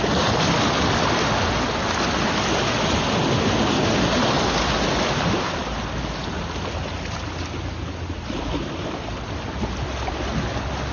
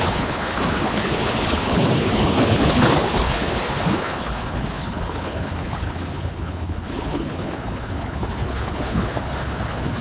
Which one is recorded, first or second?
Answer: first